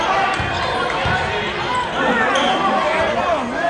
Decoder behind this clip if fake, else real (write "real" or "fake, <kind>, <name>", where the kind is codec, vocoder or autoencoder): real